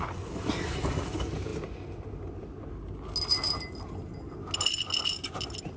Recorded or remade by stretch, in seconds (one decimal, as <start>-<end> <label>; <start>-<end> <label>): 0.0-5.8 recorded